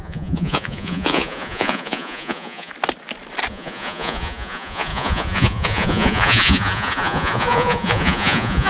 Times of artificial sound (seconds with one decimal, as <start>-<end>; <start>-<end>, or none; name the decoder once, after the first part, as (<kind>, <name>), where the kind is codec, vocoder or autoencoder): 0.0-2.7 (vocoder, Vocos); 3.5-8.7